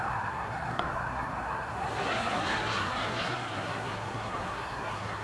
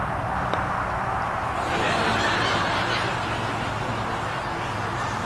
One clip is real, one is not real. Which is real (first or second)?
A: second